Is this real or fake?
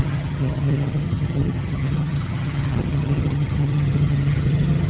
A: fake